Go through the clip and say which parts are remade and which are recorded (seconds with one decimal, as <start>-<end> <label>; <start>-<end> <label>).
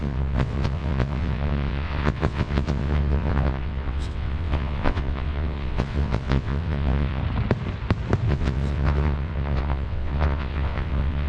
0.0-7.2 remade; 7.2-8.3 recorded; 8.3-11.3 remade